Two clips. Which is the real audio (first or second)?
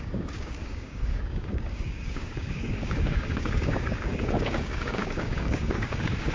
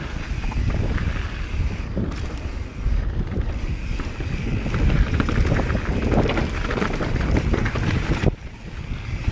second